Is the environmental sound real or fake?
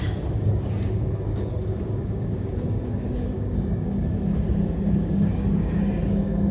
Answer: fake